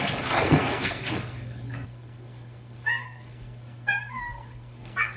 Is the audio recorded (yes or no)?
no